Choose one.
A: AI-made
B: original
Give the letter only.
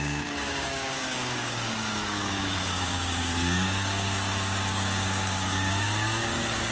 A